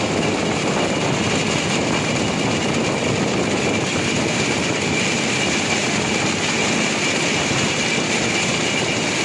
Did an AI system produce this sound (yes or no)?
no